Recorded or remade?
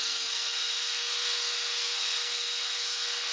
remade